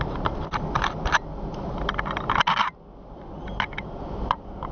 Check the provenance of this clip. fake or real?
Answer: real